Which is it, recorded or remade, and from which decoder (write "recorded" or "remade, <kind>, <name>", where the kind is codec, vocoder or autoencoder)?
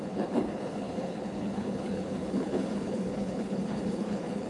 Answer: remade, codec, HILCodec